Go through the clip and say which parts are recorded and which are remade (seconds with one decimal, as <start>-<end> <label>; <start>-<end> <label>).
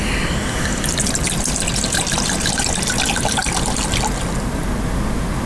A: 0.0-5.5 recorded